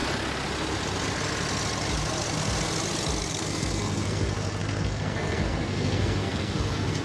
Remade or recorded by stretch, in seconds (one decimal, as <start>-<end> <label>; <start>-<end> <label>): 0.0-3.3 recorded; 3.3-7.0 remade